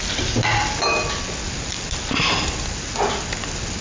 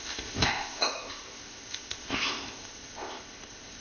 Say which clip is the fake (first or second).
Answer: second